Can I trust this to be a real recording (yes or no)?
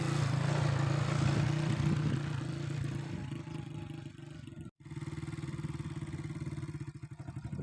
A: yes